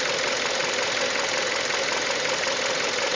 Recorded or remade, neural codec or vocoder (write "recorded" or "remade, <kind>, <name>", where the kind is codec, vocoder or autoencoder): recorded